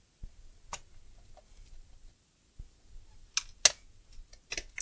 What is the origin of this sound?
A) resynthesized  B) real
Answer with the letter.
B